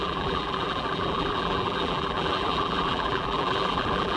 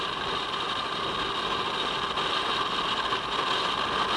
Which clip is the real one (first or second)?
second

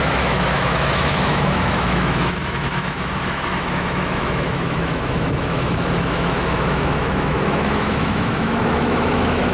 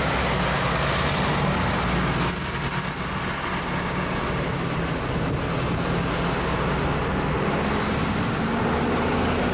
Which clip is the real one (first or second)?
second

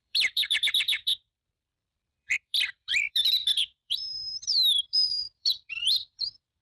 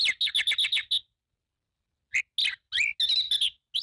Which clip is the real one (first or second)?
second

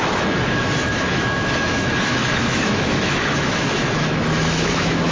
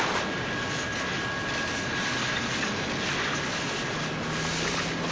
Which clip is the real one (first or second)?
second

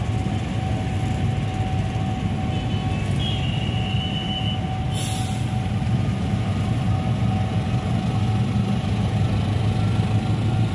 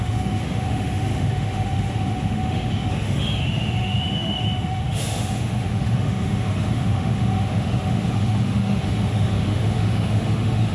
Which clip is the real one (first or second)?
first